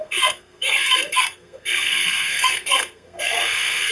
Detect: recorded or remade remade